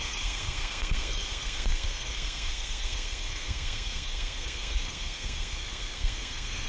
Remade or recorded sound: remade